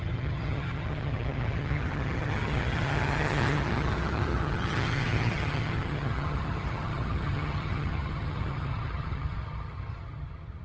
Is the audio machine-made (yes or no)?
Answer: yes